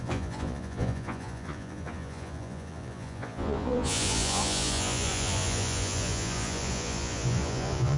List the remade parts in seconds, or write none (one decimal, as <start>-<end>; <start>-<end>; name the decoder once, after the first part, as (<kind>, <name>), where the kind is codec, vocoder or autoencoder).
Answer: 0.0-8.0 (vocoder, Vocos)